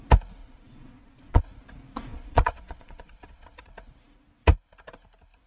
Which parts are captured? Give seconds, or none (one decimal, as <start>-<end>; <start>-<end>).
0.0-0.4; 1.4-2.1; 3.6-5.5